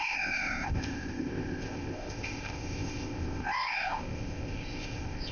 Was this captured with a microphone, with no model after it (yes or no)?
no